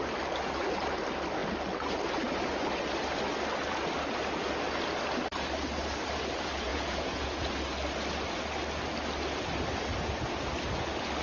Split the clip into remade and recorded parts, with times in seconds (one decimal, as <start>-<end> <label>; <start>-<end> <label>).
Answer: 0.0-6.7 recorded; 6.7-7.5 remade; 7.5-11.2 recorded